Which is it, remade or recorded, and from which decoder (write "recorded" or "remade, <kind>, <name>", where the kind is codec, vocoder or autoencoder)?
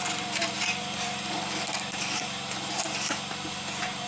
remade, vocoder, BigVGAN v2